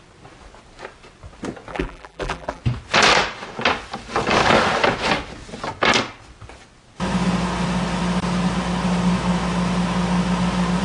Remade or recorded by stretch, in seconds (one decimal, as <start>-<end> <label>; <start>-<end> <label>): 0.0-1.7 recorded; 1.7-2.6 remade; 2.6-10.8 recorded